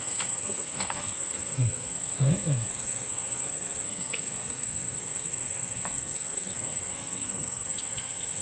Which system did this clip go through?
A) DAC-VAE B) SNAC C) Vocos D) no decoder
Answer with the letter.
B